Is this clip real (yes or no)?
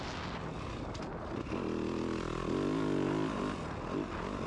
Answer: yes